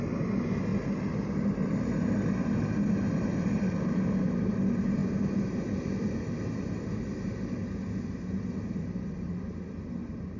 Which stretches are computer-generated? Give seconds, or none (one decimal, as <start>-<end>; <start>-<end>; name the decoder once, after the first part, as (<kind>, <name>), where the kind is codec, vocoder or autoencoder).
none